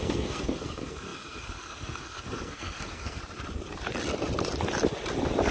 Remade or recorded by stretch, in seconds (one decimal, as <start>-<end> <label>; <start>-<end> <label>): 0.0-3.2 remade; 3.2-5.5 recorded